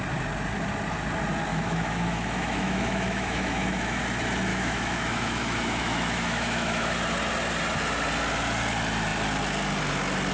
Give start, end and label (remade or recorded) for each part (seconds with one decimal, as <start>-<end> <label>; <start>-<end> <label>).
0.0-1.5 recorded; 1.5-4.0 remade; 4.0-4.5 recorded; 4.5-6.9 remade; 6.9-10.3 recorded